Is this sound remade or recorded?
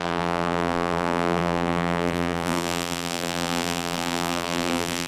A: remade